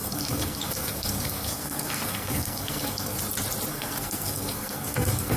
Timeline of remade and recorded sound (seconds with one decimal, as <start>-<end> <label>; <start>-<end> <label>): 0.0-3.2 remade; 3.2-3.7 recorded; 3.7-5.4 remade